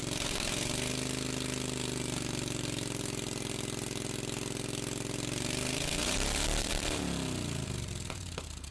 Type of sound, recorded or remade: recorded